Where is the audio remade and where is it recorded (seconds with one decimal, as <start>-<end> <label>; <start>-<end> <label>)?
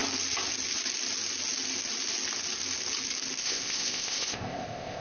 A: 0.0-3.4 recorded; 3.4-5.0 remade